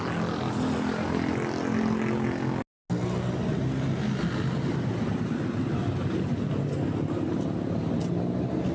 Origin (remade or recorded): recorded